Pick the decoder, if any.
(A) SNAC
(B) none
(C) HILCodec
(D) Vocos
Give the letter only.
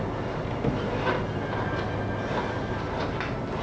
B